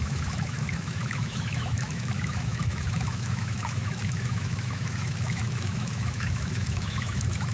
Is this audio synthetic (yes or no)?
yes